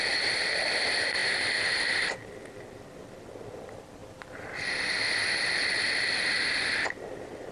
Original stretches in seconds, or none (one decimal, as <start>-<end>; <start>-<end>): 0.0-7.5